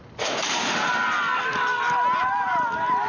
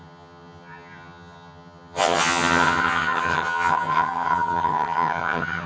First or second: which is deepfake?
second